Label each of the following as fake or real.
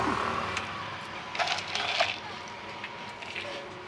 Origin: real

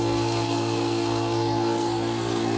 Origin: fake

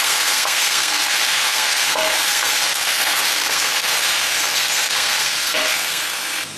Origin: fake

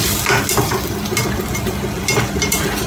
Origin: real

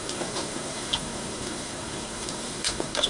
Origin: fake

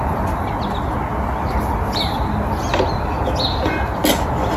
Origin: real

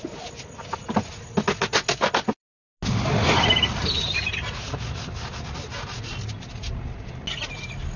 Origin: real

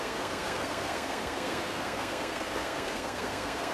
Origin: fake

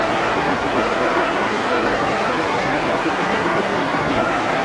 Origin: fake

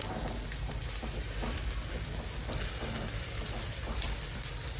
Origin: real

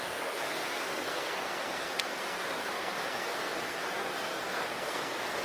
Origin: fake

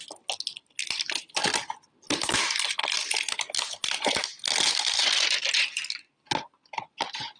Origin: real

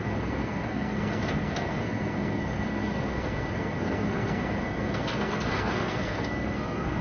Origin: fake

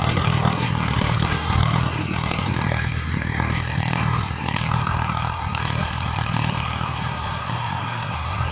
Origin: fake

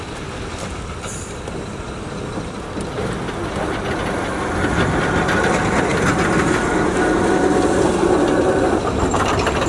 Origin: real